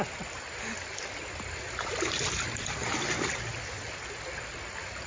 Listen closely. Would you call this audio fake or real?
real